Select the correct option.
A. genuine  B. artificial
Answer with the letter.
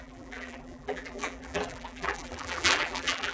B